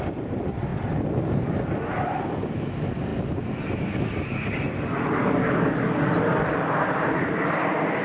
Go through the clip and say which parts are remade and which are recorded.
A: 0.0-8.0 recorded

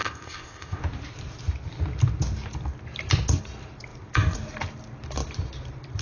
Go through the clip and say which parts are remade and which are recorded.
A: 0.0-0.8 remade; 0.8-6.0 recorded

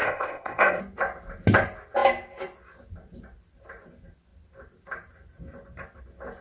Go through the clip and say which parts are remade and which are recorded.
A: 0.0-0.8 remade; 0.8-6.4 recorded